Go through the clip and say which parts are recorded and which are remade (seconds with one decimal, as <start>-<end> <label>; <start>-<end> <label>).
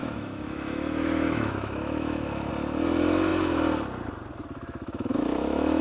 0.0-2.5 remade; 2.5-5.1 recorded; 5.1-5.8 remade